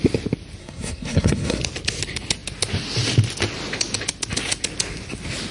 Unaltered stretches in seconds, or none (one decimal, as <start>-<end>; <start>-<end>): 0.0-0.6; 1.6-5.5

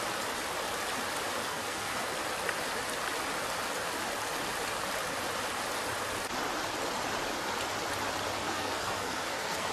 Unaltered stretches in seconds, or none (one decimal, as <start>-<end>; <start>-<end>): 0.0-1.4; 2.1-8.4

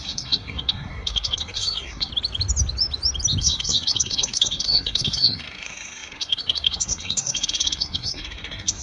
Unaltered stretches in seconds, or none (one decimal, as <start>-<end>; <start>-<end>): 2.1-3.4